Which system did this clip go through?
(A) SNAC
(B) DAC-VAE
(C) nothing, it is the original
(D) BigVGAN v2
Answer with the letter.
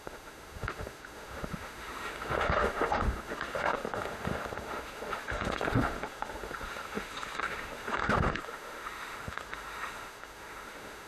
B